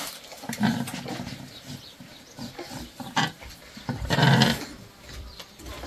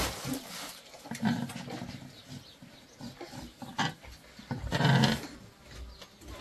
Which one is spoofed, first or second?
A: first